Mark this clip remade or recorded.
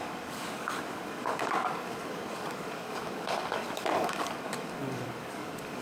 remade